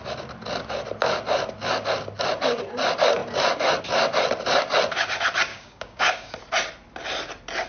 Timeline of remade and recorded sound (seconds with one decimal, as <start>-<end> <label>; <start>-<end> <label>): 0.0-5.5 recorded; 5.5-6.3 remade; 6.3-7.7 recorded